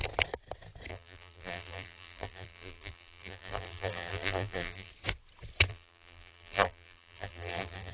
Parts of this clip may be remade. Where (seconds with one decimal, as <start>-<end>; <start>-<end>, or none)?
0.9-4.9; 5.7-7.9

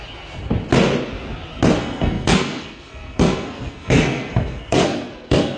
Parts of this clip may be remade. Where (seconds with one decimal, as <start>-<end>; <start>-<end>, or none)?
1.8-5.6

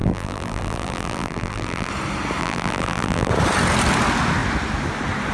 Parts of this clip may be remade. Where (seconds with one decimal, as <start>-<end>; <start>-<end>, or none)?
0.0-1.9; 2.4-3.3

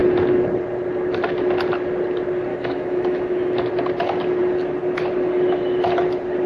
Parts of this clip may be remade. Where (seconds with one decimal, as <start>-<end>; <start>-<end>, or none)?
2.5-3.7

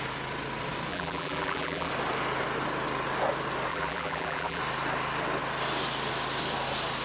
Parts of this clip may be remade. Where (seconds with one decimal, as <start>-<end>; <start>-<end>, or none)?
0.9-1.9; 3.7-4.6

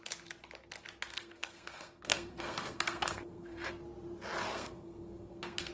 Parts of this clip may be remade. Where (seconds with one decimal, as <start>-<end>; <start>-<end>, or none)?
1.1-3.7; 4.5-5.7